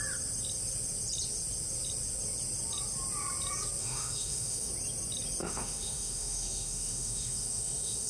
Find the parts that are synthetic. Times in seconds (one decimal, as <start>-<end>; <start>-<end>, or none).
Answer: 3.8-4.7; 5.4-8.1